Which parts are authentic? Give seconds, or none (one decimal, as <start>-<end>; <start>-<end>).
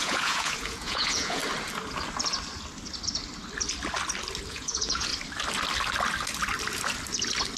1.4-4.5; 5.1-7.6